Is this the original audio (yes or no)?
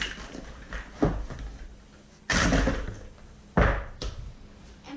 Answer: yes